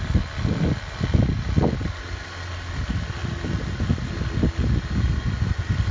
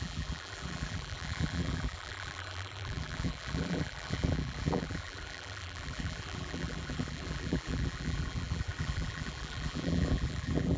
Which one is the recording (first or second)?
first